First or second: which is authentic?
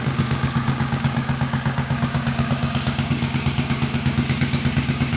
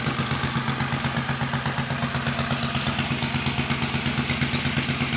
second